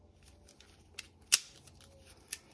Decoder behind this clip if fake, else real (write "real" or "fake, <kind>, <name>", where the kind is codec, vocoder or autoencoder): real